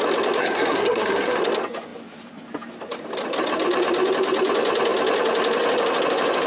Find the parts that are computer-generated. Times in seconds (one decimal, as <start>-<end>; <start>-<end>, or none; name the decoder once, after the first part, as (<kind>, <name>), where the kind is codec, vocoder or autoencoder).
0.4-1.4 (codec, SNAC)